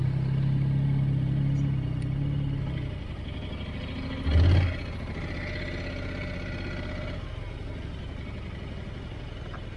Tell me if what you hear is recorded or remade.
recorded